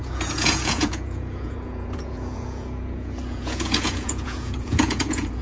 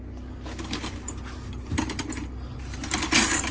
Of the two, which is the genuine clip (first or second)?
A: second